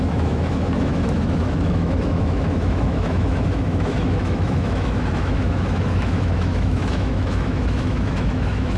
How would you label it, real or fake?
fake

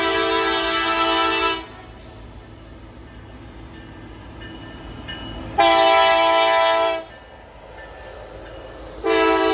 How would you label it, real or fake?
real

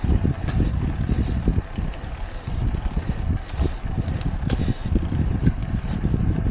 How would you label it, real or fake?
real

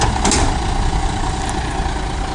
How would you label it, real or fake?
real